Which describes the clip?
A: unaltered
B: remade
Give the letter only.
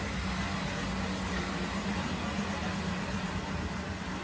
A